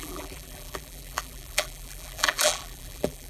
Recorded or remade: remade